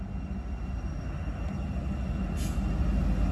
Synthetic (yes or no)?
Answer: no